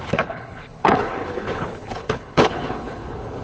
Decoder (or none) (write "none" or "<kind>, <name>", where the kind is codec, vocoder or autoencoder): codec, HILCodec